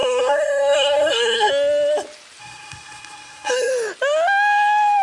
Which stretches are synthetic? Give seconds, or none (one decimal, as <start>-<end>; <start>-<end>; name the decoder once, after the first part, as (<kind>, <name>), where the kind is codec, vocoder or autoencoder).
0.0-1.5 (codec, SNAC); 2.4-3.7